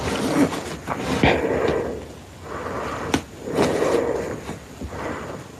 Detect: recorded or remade recorded